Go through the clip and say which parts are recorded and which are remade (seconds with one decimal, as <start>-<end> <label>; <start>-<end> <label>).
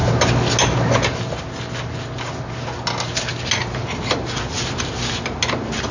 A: 0.0-5.9 recorded